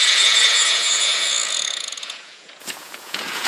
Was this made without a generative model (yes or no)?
no